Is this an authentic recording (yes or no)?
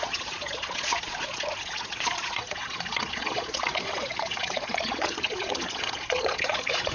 no